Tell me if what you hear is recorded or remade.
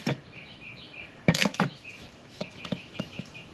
remade